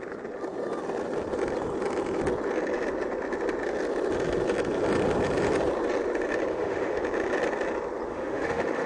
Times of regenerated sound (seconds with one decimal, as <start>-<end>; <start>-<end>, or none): 6.5-7.0; 8.1-8.9